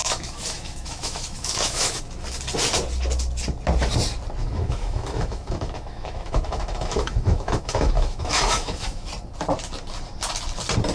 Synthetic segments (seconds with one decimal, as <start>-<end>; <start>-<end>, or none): 0.0-2.0; 4.4-9.1